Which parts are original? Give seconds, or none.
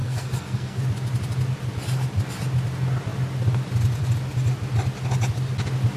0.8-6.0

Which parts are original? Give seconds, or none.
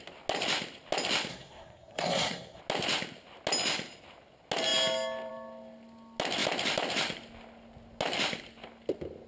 0.0-1.3; 2.6-9.3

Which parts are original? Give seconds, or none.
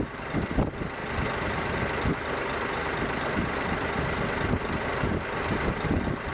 0.0-6.3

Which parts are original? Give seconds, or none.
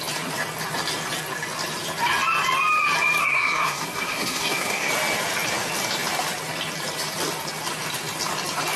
0.0-3.2; 4.9-8.8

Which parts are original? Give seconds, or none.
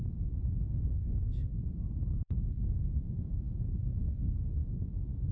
1.5-2.2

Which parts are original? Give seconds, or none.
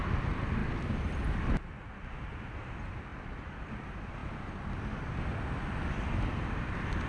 0.0-7.1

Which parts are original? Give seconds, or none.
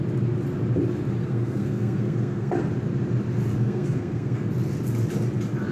0.0-1.2; 2.6-3.5; 4.5-5.7